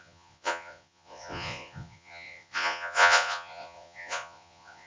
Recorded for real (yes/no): no